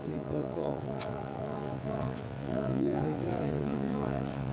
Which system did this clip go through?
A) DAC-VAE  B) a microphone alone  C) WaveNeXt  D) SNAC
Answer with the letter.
C